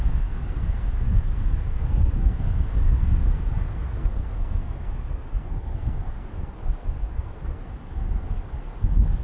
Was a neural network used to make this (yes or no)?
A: yes